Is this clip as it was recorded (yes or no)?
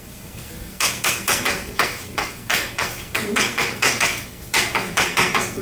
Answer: no